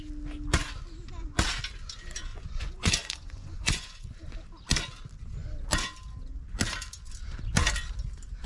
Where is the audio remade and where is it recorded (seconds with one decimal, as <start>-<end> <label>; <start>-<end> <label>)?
0.0-2.3 recorded; 2.3-4.2 remade; 4.2-8.5 recorded

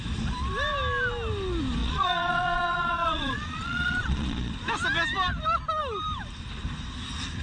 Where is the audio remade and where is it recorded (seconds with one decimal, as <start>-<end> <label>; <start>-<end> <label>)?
0.0-1.8 recorded; 1.8-4.5 remade; 4.5-7.4 recorded